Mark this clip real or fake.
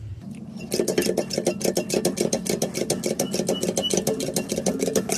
real